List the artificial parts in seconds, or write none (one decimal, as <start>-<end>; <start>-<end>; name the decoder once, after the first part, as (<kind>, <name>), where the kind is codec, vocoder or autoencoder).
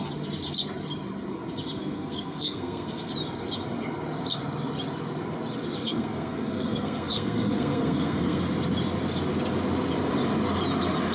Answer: 1.8-3.1 (codec, SNAC); 5.8-8.4